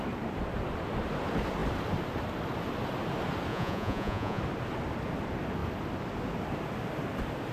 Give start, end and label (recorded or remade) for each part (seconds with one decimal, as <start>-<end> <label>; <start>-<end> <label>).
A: 0.0-3.5 recorded; 3.5-4.4 remade; 4.4-7.5 recorded